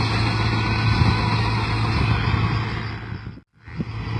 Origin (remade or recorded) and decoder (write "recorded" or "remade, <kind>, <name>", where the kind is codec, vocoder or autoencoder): recorded